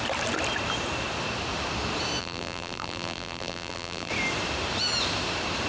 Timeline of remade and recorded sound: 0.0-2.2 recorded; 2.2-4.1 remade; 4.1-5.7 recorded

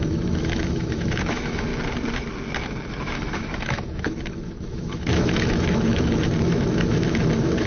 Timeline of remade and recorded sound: 0.0-1.7 remade; 1.7-2.9 recorded; 2.9-7.7 remade

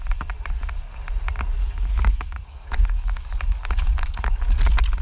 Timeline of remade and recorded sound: 0.0-1.6 recorded; 1.6-4.6 remade; 4.6-5.0 recorded

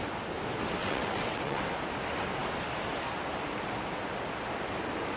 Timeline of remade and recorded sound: 0.0-0.8 recorded; 0.8-1.6 remade; 1.6-5.2 recorded